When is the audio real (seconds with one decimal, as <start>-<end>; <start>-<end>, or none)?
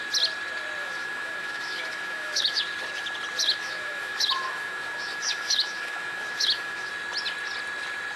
0.0-0.8; 2.6-3.4; 6.9-8.2